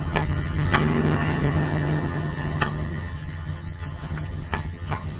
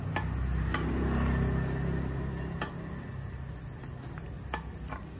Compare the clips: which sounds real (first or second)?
second